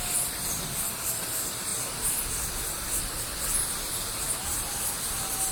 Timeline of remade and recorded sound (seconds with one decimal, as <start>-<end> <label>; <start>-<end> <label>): 0.0-5.5 recorded